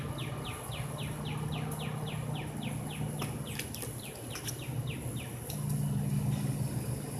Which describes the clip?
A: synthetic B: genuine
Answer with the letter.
B